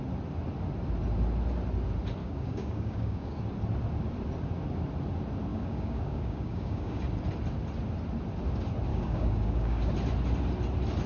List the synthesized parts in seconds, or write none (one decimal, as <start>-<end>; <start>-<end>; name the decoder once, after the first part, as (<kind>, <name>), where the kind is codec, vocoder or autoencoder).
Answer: 2.2-3.4 (codec, DAC); 5.5-7.0; 8.9-9.9